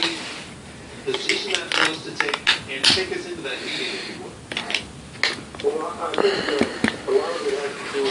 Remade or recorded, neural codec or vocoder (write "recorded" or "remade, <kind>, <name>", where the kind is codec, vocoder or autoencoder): recorded